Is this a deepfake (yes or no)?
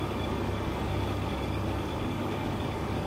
yes